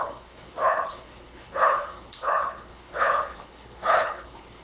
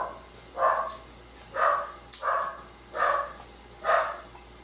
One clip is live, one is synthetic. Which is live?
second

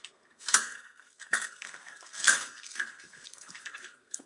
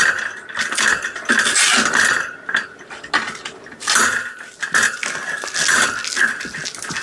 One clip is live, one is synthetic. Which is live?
second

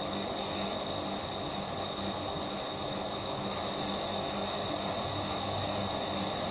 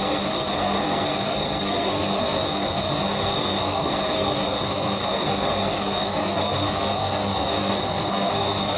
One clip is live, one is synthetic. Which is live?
first